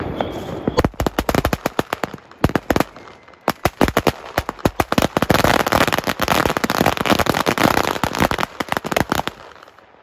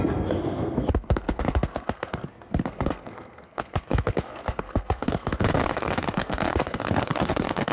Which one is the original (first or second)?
first